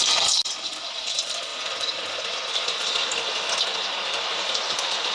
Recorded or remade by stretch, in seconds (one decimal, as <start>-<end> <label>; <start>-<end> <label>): 0.0-5.1 recorded